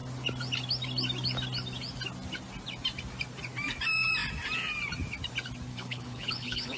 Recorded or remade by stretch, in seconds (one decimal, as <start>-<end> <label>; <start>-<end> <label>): 0.0-5.7 recorded; 5.7-6.8 remade